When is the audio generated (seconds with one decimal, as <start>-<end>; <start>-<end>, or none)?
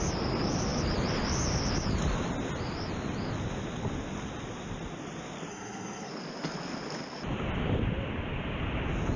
5.5-6.1